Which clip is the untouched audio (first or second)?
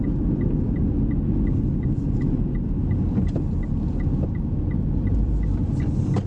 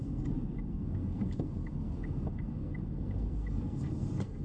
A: first